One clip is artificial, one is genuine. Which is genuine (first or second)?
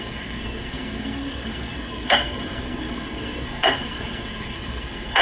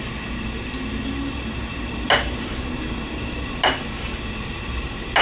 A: second